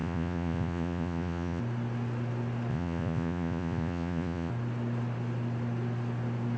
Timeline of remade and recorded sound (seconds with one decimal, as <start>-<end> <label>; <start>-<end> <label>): 0.0-1.6 remade; 1.6-2.7 recorded; 2.7-4.5 remade; 4.5-6.6 recorded